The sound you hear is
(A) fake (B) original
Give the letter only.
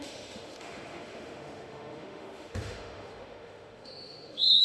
A